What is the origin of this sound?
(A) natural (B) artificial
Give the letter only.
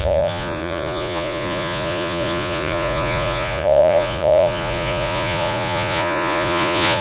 B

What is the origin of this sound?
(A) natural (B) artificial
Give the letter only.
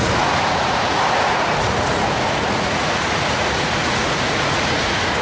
B